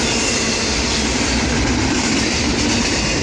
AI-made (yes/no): no